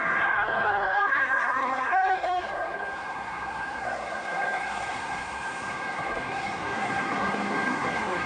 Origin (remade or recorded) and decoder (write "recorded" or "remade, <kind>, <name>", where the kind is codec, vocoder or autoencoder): remade, codec, SNAC